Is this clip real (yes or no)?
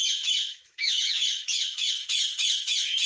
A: no